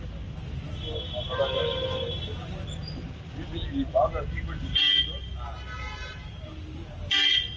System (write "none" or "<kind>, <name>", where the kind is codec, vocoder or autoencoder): none